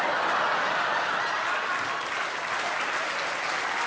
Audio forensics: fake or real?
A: real